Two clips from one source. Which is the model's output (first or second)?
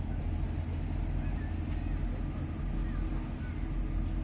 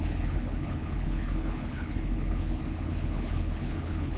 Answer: second